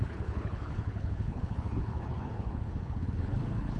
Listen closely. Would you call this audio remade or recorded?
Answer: remade